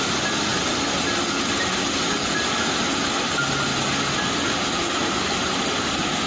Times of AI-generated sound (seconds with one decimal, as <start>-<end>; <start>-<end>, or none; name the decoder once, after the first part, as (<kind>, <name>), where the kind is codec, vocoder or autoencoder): 0.5-1.4 (vocoder, BigVGAN v2); 5.0-6.3